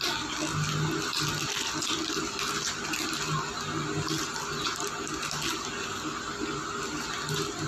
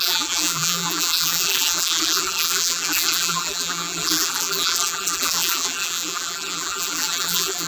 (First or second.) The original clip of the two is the first